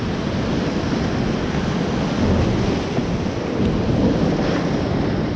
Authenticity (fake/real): real